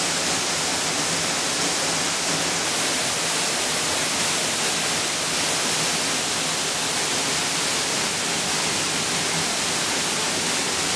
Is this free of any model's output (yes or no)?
yes